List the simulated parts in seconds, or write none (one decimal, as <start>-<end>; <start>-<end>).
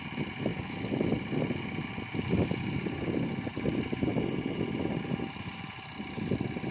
none